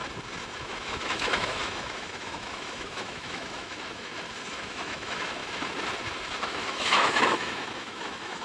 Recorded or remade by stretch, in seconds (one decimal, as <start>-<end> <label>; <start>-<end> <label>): 0.0-0.6 recorded; 0.6-4.1 remade; 4.1-4.6 recorded; 4.6-5.4 remade; 5.4-6.4 recorded; 6.4-8.4 remade